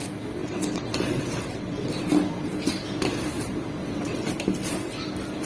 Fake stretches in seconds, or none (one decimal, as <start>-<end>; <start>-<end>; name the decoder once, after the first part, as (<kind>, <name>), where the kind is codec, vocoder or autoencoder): 0.4-1.9 (vocoder, WaveNeXt); 3.8-4.3